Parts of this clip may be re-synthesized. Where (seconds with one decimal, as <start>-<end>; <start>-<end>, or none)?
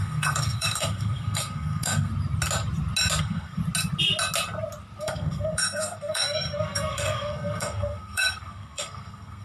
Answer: 0.0-2.1; 3.2-3.6; 5.0-9.4